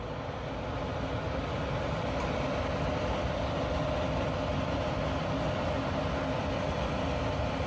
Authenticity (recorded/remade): recorded